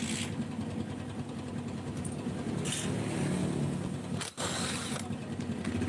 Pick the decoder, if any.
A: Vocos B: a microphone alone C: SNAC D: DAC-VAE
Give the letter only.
B